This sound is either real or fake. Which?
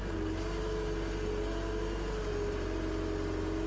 real